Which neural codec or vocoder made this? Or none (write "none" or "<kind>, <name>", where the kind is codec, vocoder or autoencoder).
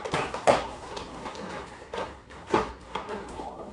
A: codec, SNAC